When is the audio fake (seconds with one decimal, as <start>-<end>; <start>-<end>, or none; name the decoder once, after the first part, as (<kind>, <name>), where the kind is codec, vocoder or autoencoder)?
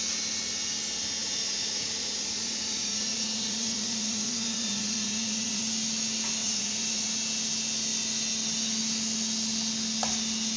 1.2-5.6 (vocoder, Vocos); 6.4-7.1